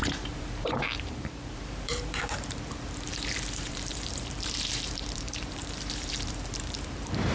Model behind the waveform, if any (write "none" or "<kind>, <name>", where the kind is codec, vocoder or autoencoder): vocoder, BigVGAN v2